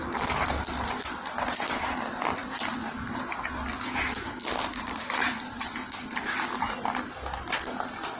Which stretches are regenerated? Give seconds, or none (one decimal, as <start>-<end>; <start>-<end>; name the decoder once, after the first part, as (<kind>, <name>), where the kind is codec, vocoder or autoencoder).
none